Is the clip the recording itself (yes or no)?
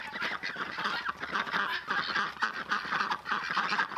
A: yes